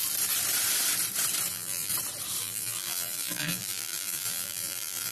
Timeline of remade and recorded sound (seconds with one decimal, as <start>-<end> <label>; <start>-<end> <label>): 0.0-1.5 recorded; 1.5-1.9 remade; 1.9-2.4 recorded; 2.4-5.1 remade